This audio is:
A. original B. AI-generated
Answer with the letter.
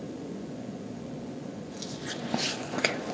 B